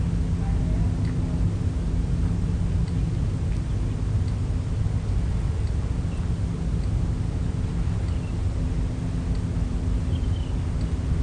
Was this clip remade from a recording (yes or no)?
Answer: no